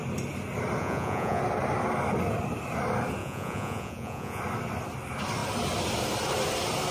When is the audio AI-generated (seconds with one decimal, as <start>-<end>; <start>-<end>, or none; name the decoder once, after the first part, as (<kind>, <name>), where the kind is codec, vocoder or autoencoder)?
0.8-1.4 (vocoder, Vocos); 3.2-4.4